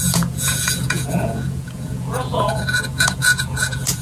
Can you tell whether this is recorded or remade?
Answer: remade